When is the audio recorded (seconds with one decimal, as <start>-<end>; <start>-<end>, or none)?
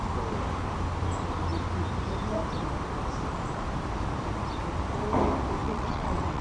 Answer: 0.0-5.6